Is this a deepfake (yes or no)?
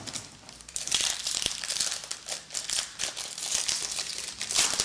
yes